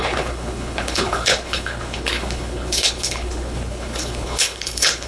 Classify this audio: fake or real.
fake